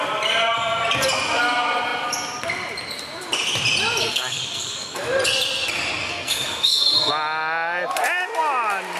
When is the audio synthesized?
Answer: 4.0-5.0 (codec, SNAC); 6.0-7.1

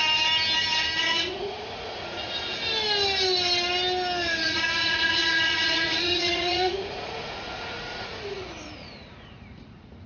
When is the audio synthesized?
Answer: 1.0-2.5 (vocoder, Vocos); 4.4-10.1

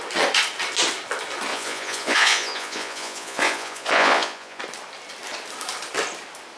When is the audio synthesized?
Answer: 1.5-4.6 (vocoder, Vocos)

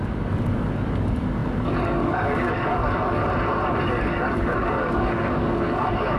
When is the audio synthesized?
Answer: 0.0-3.2 (codec, DAC); 3.8-6.2

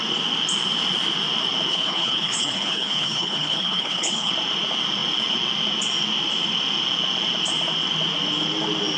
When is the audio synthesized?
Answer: 1.7-4.3 (codec, HILCodec)

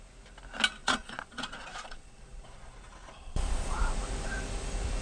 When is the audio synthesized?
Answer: 0.8-3.8 (vocoder, Vocos)